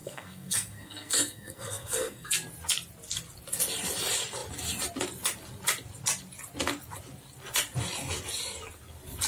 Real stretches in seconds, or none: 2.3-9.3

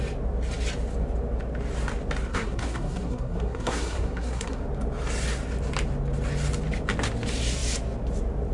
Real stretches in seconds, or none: 0.0-2.3; 4.6-8.5